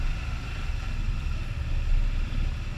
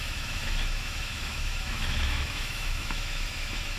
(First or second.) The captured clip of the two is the first